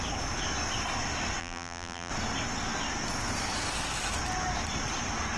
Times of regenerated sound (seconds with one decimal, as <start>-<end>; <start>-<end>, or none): 1.4-2.1

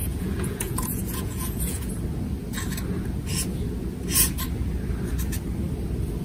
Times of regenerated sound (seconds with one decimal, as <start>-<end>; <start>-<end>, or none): 0.0-1.9

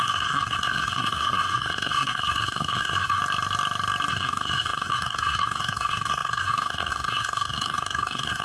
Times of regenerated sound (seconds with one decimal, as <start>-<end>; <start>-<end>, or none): 0.0-3.2; 4.1-8.4